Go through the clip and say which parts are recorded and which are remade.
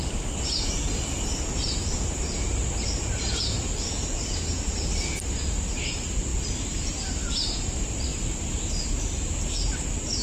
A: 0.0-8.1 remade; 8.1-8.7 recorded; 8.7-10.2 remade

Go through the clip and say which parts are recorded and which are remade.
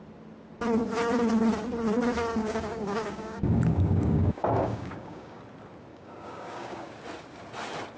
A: 0.0-2.4 recorded; 2.4-5.4 remade; 5.4-5.9 recorded; 5.9-6.9 remade; 6.9-8.0 recorded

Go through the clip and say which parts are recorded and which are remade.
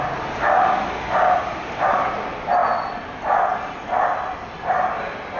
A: 0.0-5.4 recorded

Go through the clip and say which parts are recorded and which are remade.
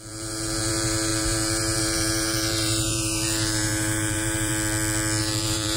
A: 0.0-4.5 remade; 4.5-5.2 recorded; 5.2-5.8 remade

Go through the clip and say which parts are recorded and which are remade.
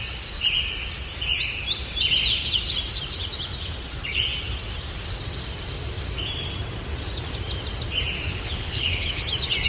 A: 0.0-8.3 recorded; 8.3-9.2 remade; 9.2-9.7 recorded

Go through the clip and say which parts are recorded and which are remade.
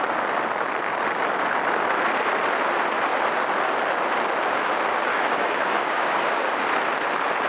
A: 0.0-5.1 recorded; 5.1-6.6 remade; 6.6-7.5 recorded